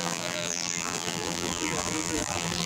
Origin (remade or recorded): remade